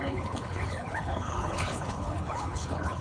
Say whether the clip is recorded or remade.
remade